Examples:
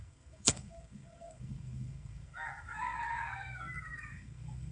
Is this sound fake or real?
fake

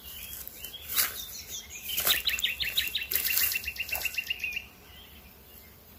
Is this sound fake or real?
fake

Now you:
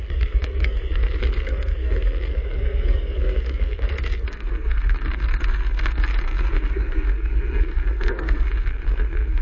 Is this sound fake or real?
fake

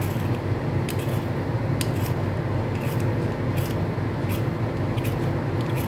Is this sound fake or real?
real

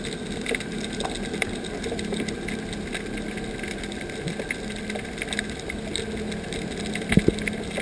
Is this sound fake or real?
real